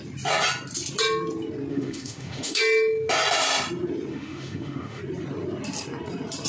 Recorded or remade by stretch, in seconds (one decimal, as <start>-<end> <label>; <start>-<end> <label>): 0.0-1.7 recorded; 1.7-2.6 remade; 2.6-4.1 recorded; 4.1-5.0 remade; 5.0-6.5 recorded

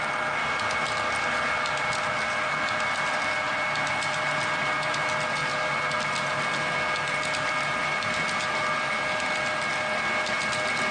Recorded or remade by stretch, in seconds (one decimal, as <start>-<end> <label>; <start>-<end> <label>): 0.0-10.9 recorded